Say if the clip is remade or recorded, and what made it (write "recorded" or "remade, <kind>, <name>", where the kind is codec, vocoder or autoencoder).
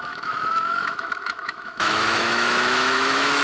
remade, autoencoder, DAC-VAE